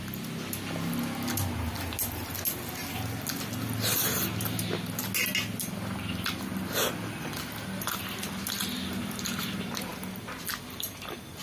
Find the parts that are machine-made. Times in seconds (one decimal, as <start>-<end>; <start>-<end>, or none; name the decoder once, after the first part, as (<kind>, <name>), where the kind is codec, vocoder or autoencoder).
none